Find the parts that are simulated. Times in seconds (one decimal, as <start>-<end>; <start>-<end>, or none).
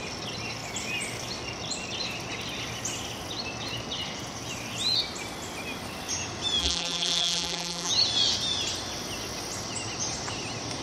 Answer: 6.6-7.9